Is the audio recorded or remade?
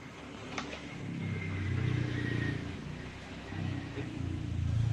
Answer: remade